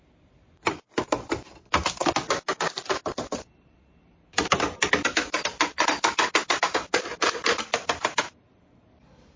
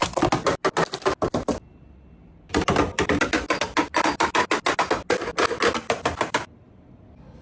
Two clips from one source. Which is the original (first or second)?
second